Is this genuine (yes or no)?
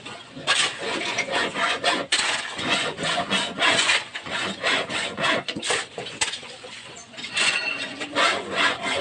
no